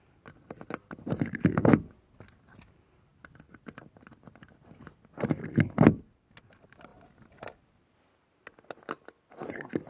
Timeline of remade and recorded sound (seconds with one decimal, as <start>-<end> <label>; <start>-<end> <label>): 0.0-9.9 recorded